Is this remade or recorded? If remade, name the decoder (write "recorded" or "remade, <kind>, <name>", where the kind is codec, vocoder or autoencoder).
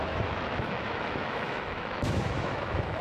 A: remade, autoencoder, DAC-VAE